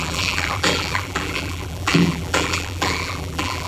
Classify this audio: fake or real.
fake